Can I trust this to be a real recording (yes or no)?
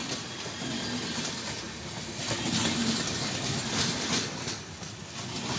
yes